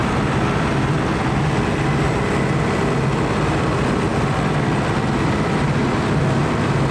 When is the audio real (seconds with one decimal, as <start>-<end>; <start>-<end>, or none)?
0.0-6.9